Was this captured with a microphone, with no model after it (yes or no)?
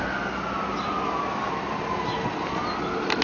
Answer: yes